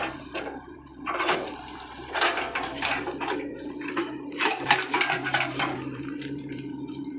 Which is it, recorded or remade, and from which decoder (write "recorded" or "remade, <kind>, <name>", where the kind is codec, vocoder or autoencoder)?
remade, vocoder, BigVGAN v2